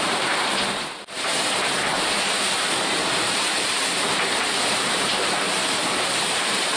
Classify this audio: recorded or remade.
remade